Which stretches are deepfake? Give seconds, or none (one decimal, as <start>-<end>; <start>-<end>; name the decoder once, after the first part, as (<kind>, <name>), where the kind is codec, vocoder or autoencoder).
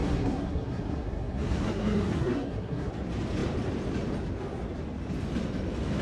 0.0-2.9 (codec, SNAC)